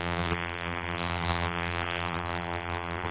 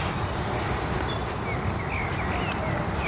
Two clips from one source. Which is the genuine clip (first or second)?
second